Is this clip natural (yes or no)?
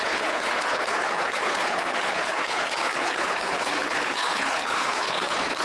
no